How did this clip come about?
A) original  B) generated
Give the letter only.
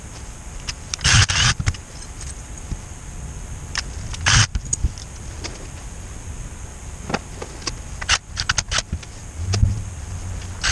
A